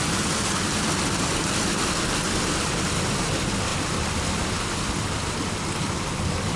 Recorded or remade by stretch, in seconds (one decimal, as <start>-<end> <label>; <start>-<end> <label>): 0.0-6.6 recorded